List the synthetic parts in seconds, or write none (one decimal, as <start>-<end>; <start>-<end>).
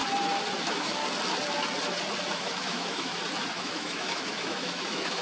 0.6-1.0; 2.3-3.1; 3.6-5.2